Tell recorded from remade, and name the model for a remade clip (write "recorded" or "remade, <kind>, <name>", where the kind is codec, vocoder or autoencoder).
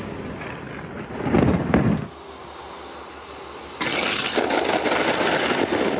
recorded